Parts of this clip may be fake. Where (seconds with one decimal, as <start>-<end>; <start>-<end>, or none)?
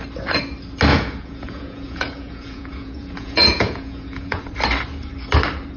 0.9-4.4